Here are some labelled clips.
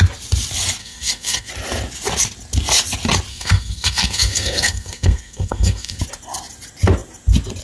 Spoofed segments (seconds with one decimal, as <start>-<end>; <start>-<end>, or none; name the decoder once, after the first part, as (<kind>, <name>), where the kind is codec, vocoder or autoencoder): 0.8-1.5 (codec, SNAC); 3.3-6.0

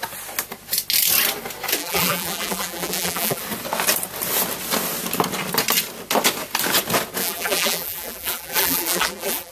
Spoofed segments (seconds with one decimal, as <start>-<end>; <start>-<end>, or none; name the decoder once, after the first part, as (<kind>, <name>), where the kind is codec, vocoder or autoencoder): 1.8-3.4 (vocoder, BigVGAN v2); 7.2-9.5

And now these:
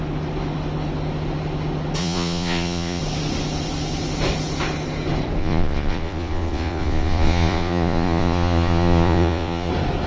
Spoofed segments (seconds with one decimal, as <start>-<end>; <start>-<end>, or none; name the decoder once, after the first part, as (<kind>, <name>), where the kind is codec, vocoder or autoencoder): 2.0-3.0 (vocoder, Vocos); 5.4-9.7

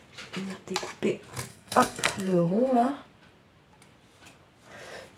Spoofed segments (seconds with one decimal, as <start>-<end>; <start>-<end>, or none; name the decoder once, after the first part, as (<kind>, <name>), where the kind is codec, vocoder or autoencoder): 1.5-2.9 (codec, SNAC)

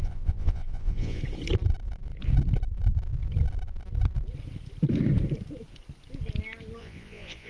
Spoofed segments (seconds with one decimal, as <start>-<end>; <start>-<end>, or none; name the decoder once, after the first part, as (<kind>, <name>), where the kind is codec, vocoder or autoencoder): 0.0-1.2 (vocoder, Vocos); 6.8-7.5

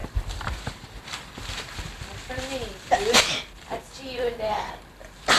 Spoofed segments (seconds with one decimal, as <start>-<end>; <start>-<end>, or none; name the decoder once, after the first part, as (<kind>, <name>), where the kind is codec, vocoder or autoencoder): 0.0-5.4 (vocoder, BigVGAN v2)

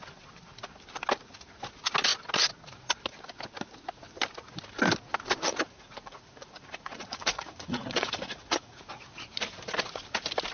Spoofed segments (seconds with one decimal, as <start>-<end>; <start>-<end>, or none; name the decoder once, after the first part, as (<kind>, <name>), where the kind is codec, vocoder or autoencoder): 5.5-8.8 (vocoder, Vocos)